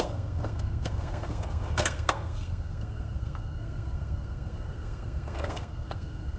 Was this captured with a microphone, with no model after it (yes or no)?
no